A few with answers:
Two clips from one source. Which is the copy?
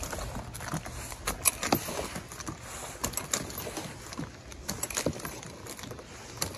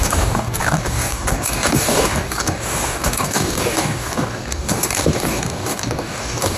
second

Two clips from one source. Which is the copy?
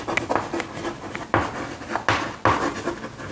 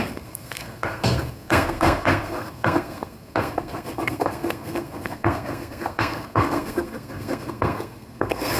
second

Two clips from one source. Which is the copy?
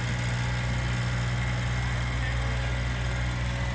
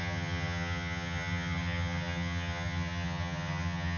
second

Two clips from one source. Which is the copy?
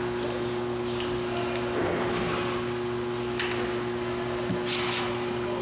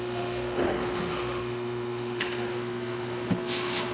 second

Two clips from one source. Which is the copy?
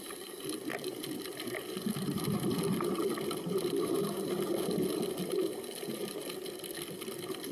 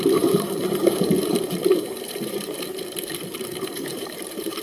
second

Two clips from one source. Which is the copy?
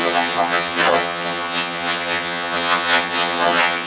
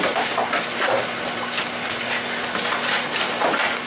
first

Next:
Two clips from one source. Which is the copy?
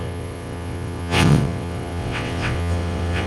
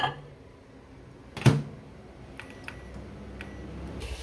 first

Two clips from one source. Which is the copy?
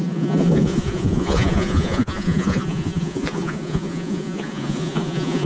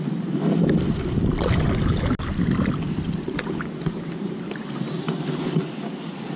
first